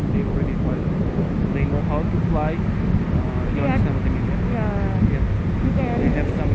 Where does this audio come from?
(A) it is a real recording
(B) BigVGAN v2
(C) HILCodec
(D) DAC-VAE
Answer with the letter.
A